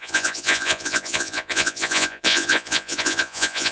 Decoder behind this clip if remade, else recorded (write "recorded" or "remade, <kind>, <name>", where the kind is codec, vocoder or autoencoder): remade, vocoder, Vocos